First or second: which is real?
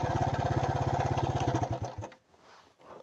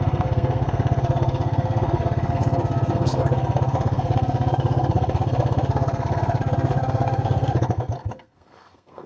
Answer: first